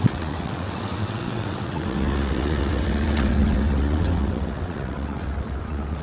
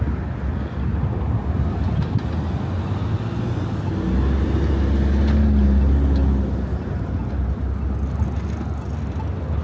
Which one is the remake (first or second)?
first